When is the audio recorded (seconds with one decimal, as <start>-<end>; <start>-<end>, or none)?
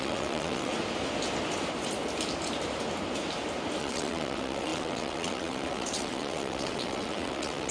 0.7-3.8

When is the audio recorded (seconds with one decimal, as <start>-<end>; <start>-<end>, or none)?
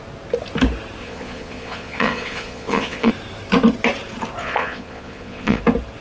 0.0-1.0; 3.1-4.4; 5.6-6.0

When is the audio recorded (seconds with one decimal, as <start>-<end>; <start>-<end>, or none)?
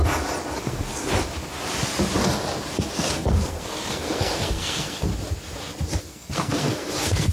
0.0-0.6; 1.1-2.9; 5.1-6.0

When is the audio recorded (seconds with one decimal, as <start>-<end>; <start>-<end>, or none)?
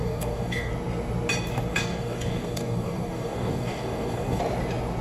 0.7-1.7; 4.4-5.0